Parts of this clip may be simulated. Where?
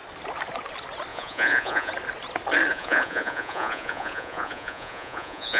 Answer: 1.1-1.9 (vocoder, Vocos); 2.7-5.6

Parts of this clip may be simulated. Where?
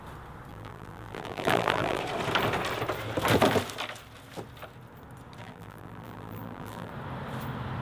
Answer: 0.5-2.0 (vocoder, BigVGAN v2); 5.4-6.9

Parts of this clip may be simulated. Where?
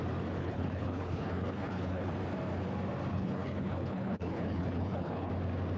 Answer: 0.4-2.1 (codec, HILCodec); 3.1-5.3